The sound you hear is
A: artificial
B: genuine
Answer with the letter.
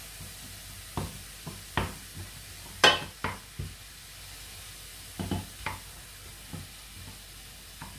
B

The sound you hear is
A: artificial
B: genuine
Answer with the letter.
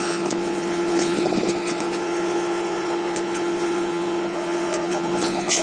A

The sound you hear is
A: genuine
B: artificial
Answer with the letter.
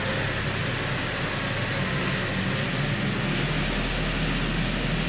A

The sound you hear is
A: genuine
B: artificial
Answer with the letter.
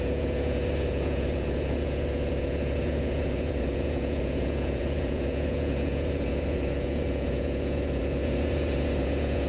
B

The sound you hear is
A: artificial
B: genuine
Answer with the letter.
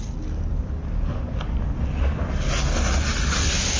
B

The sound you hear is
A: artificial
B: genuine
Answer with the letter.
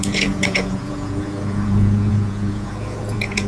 A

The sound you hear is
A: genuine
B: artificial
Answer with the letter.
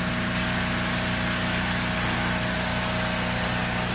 A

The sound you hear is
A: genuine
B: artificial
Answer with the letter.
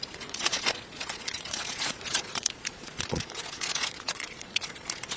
B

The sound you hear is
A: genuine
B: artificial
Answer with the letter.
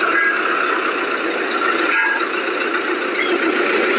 A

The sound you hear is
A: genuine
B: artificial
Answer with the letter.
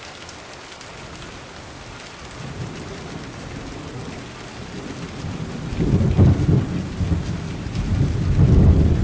A